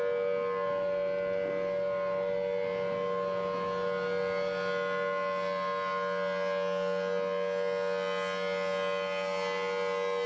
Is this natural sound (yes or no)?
yes